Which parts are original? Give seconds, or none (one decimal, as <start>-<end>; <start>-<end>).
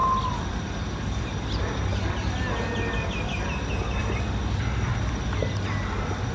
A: 0.0-6.3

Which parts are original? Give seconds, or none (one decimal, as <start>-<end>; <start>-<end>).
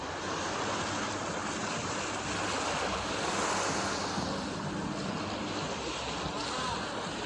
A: 0.0-7.3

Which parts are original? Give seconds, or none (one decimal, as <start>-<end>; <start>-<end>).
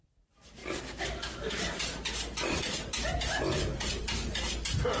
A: 0.0-5.0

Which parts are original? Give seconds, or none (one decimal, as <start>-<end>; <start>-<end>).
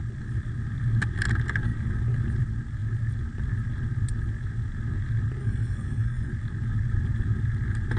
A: 0.0-5.4; 6.3-8.0